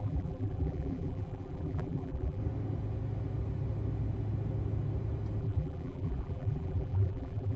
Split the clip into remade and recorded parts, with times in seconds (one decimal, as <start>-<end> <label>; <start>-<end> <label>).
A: 0.0-2.4 remade; 2.4-5.4 recorded; 5.4-7.6 remade